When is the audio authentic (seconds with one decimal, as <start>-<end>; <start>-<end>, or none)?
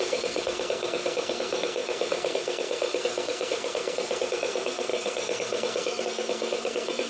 none